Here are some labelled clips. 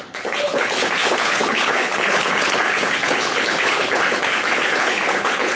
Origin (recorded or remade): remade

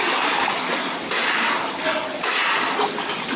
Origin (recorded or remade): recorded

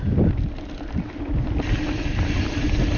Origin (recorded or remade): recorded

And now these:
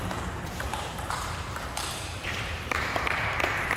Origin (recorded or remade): remade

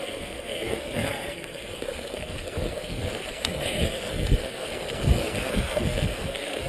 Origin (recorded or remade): remade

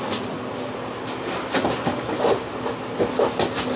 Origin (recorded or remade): recorded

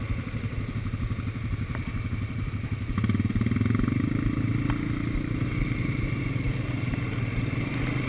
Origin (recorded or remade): recorded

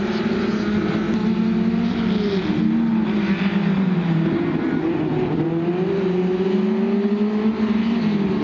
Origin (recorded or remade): recorded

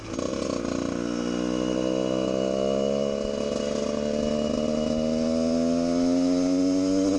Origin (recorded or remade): recorded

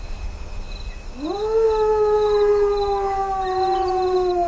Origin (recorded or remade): recorded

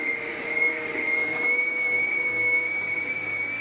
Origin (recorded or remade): remade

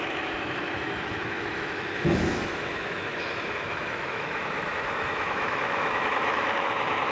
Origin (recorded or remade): remade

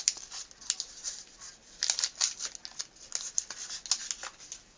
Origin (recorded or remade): recorded